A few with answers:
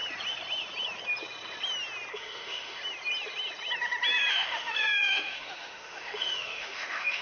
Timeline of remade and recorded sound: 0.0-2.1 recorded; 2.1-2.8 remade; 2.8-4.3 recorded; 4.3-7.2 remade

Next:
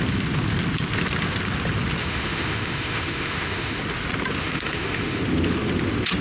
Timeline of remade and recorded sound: 0.0-2.0 recorded; 2.0-3.8 remade; 3.8-4.4 recorded; 4.4-5.2 remade; 5.2-6.2 recorded